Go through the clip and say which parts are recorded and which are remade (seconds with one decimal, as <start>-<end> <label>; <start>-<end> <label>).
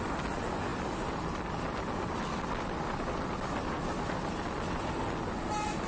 0.0-5.9 recorded